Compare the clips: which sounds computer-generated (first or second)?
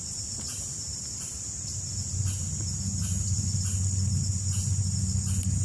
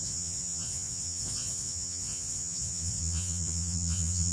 second